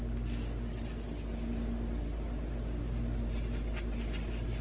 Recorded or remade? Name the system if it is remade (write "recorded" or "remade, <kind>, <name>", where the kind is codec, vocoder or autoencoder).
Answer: recorded